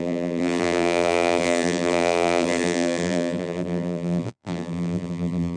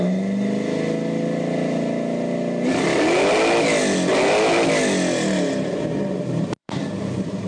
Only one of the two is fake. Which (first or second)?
first